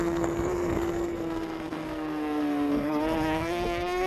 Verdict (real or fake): fake